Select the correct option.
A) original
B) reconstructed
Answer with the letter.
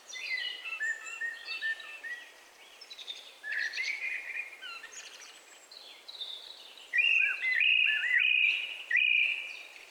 B